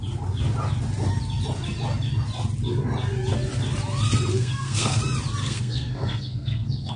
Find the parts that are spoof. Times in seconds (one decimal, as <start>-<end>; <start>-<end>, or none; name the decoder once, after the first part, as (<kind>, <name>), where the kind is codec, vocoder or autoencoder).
4.3-5.0 (codec, SNAC); 5.4-7.0